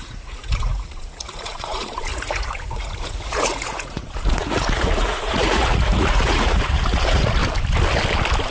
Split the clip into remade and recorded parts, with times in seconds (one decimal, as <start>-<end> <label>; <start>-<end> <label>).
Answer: 0.0-7.4 remade; 7.4-8.5 recorded